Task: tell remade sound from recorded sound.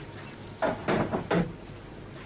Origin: recorded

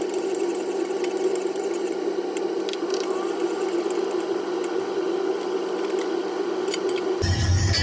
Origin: recorded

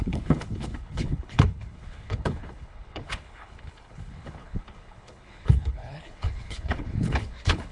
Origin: remade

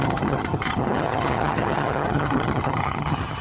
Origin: remade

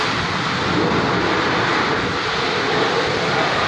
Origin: recorded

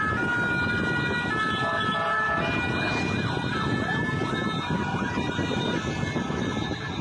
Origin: recorded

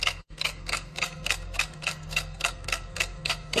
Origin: remade